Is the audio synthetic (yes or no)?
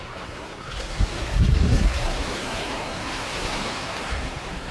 yes